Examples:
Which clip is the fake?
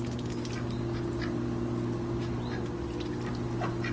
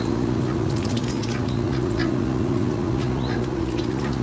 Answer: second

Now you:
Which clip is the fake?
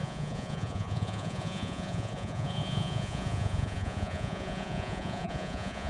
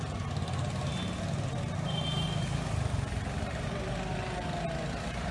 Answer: first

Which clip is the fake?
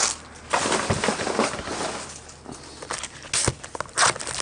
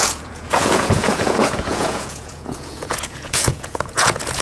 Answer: second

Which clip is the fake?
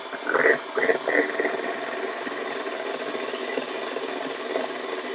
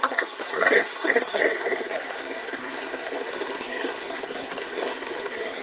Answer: second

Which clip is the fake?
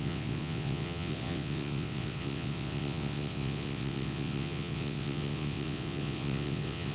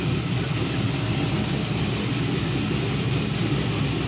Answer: first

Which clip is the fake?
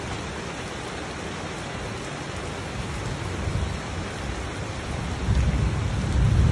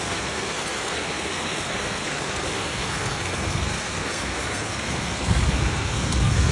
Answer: second